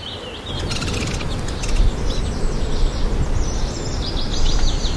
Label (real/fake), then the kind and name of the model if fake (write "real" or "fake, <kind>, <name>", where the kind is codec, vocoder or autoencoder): real